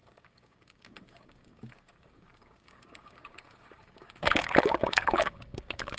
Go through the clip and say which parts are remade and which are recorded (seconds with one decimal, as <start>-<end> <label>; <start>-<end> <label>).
0.0-6.0 remade